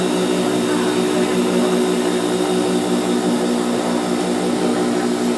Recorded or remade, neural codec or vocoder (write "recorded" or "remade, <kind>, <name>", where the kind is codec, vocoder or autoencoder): recorded